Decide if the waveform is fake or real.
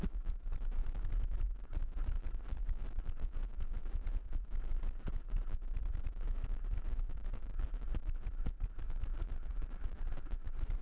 fake